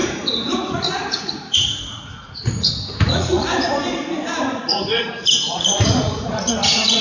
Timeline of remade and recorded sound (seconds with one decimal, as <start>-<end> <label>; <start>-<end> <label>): 0.0-7.0 remade